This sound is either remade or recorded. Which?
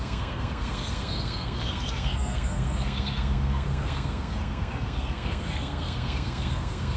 remade